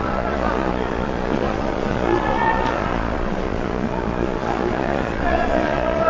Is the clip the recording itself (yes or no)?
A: no